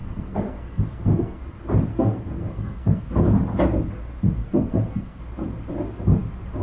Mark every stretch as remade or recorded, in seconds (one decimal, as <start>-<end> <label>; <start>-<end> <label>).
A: 0.0-1.4 remade; 1.4-1.9 recorded; 1.9-3.1 remade; 3.1-4.4 recorded; 4.4-5.2 remade; 5.2-6.6 recorded